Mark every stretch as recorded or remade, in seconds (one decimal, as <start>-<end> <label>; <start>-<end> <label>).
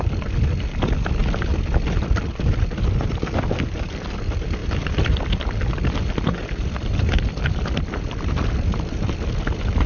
0.0-9.9 recorded